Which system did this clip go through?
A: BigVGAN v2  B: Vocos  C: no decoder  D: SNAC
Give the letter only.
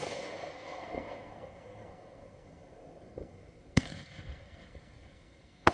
D